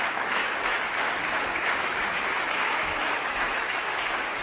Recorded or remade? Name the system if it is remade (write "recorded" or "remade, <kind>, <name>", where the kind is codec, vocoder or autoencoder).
remade, autoencoder, DAC-VAE